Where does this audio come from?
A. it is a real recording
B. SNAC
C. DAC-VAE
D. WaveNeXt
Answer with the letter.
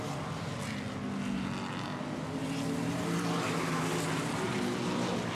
A